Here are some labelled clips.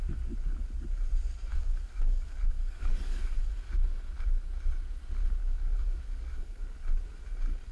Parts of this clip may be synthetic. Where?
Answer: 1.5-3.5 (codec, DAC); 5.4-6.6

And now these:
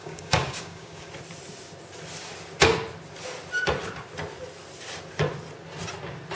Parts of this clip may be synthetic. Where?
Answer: 0.0-1.1 (codec, DAC)

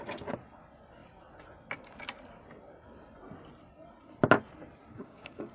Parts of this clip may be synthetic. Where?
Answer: 4.9-5.5 (codec, DAC)

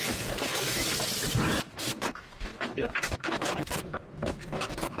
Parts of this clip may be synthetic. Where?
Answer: 0.0-0.8 (codec, DAC); 1.6-5.0

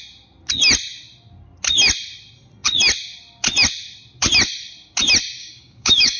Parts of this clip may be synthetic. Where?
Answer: 5.4-6.2 (codec, DAC)

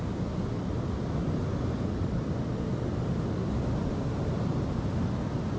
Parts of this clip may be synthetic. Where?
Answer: none